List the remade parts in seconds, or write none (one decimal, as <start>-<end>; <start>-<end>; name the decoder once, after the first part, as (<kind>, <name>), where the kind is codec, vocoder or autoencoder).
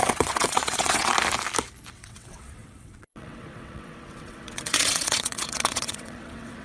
0.0-1.1 (vocoder, WaveNeXt); 1.9-6.6